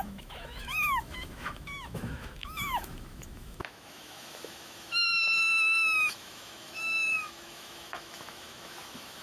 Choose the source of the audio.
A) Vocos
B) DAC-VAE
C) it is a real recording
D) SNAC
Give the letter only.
B